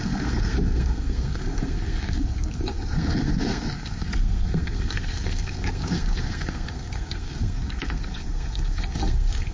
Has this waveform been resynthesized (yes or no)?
yes